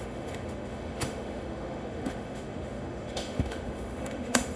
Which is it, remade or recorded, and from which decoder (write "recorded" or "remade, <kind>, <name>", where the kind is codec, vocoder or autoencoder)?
remade, autoencoder, DAC-VAE